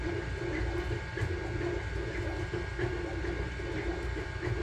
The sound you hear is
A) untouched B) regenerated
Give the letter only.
A